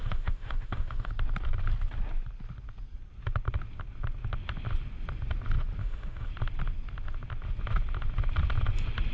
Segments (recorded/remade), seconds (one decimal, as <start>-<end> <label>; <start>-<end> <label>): 0.0-1.1 remade; 1.1-5.8 recorded; 5.8-6.3 remade; 6.3-9.1 recorded